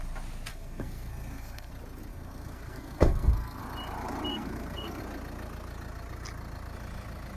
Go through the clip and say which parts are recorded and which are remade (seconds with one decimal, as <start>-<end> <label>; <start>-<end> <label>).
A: 0.0-0.5 recorded; 0.5-1.7 remade; 1.7-2.1 recorded; 2.1-3.6 remade; 3.6-4.3 recorded; 4.3-5.0 remade; 5.0-7.4 recorded